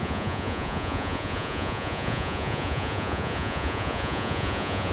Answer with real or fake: fake